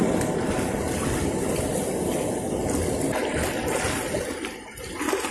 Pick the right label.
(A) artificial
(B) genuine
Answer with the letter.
B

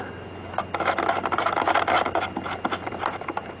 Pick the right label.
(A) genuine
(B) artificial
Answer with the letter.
A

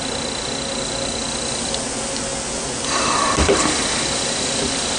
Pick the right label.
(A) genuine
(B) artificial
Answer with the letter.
A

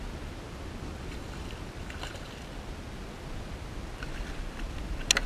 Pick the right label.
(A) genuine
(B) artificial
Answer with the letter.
A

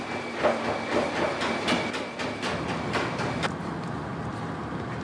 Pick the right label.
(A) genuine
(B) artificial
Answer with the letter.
A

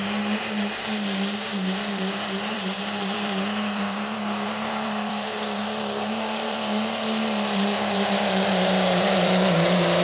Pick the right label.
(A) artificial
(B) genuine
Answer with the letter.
A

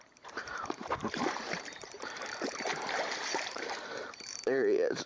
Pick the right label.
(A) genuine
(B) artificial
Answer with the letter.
B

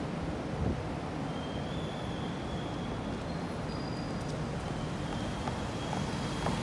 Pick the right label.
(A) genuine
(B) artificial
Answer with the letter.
A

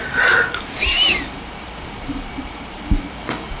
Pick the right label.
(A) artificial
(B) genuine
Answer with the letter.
A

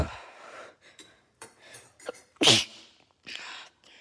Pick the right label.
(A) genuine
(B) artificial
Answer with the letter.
B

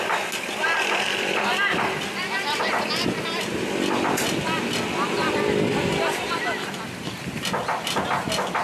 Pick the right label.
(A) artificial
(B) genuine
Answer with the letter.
B